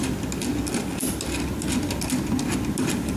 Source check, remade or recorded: recorded